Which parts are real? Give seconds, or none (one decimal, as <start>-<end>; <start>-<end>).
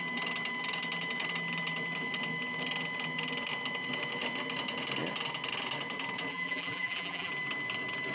0.0-6.3; 7.3-8.1